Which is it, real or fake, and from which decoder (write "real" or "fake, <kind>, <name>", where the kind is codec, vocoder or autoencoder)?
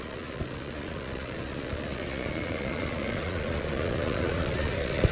fake, vocoder, Vocos